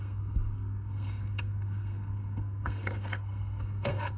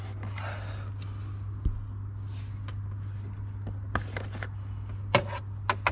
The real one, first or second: second